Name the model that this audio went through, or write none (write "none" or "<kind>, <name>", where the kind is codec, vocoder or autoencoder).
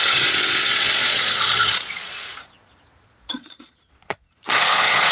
vocoder, Vocos